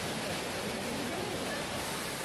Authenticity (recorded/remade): recorded